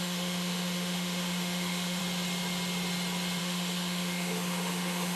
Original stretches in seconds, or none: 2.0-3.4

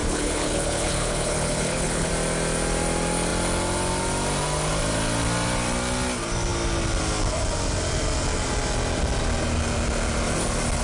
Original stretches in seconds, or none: 2.1-10.8

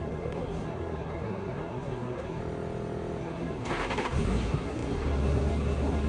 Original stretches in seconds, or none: 2.4-3.2